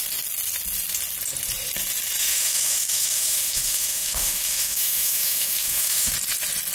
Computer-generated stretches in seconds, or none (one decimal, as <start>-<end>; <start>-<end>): 2.2-6.1